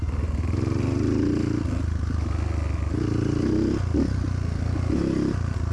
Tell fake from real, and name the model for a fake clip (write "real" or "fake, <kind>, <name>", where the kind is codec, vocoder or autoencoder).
real